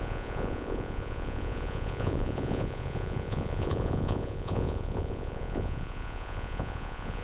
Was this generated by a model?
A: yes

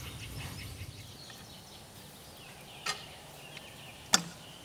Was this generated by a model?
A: no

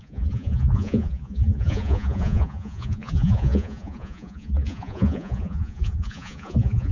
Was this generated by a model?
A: yes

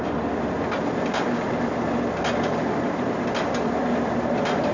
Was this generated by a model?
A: no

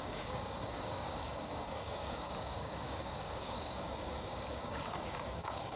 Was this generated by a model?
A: yes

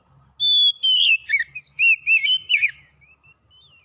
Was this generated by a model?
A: no